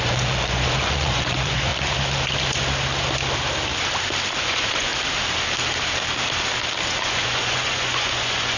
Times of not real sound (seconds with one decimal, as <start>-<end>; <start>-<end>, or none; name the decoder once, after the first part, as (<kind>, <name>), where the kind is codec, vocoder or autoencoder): 0.0-1.7 (vocoder, Vocos); 4.4-4.9; 6.9-8.6

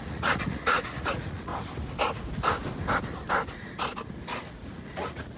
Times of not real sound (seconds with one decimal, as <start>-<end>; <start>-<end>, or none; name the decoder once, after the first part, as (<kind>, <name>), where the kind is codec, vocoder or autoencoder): 0.0-1.5 (vocoder, Vocos); 4.5-5.4

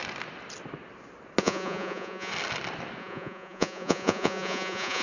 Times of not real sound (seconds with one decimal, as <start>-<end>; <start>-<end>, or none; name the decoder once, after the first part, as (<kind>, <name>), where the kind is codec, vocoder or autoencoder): 1.4-2.3 (vocoder, Vocos); 3.0-5.0

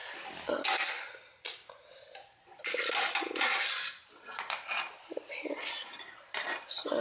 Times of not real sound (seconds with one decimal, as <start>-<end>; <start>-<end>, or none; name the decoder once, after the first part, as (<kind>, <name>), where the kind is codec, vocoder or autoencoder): none

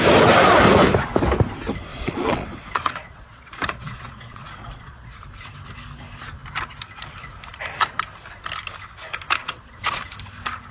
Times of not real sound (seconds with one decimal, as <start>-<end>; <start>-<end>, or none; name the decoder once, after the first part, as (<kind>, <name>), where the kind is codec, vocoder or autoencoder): 1.9-5.1 (vocoder, Vocos); 9.4-10.0

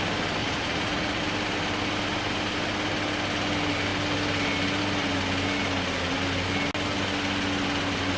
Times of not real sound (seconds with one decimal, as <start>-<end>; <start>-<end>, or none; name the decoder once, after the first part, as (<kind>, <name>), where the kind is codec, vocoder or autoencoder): 0.4-1.2 (vocoder, Vocos)

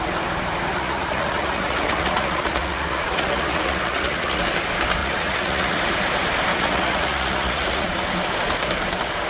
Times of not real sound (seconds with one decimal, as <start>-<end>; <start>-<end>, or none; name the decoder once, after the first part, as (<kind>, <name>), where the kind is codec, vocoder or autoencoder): 0.7-4.4 (vocoder, Vocos); 5.0-5.8; 6.5-7.9

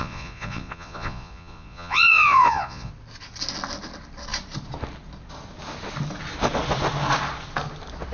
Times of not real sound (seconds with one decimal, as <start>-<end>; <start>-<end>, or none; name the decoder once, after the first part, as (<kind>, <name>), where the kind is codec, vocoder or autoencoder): 0.0-2.9 (vocoder, Vocos)